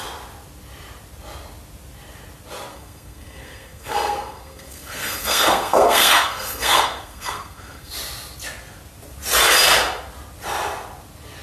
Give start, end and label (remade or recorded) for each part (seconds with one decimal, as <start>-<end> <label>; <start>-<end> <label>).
0.0-2.7 recorded; 2.7-7.9 remade; 7.9-11.4 recorded

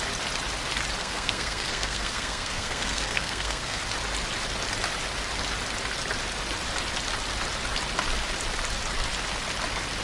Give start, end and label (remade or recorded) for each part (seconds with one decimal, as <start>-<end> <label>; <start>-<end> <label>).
0.0-1.0 recorded; 1.0-3.8 remade; 3.8-10.0 recorded

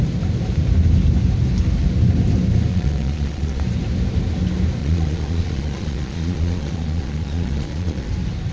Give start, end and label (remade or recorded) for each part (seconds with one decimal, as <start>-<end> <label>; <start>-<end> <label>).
0.0-2.7 recorded; 2.7-3.6 remade; 3.6-4.8 recorded; 4.8-8.1 remade; 8.1-8.5 recorded